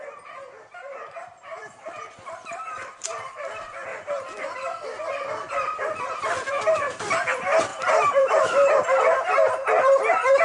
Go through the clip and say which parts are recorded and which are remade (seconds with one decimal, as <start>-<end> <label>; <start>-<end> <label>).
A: 0.0-7.7 recorded; 7.7-9.3 remade; 9.3-10.4 recorded